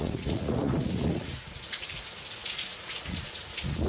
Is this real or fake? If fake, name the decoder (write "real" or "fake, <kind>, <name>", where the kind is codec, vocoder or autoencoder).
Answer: fake, vocoder, Vocos